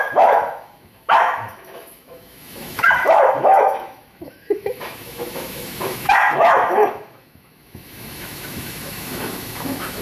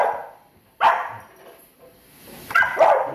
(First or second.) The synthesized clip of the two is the first